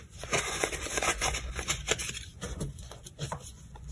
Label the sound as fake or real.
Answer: fake